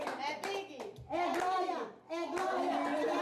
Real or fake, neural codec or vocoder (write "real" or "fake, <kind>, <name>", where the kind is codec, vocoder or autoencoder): real